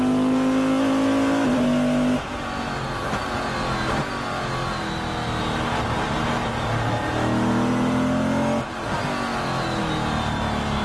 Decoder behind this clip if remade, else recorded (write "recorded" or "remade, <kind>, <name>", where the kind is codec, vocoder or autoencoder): recorded